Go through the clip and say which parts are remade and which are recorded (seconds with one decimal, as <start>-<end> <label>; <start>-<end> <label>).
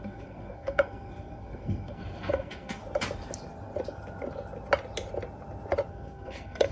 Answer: 0.0-2.8 remade; 2.8-5.9 recorded; 5.9-6.7 remade